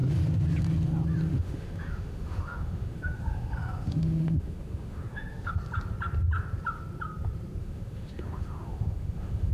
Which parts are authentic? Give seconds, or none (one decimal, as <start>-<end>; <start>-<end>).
0.0-1.3; 5.5-7.6

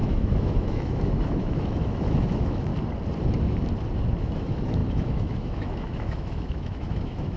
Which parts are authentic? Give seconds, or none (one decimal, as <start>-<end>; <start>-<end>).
2.7-4.2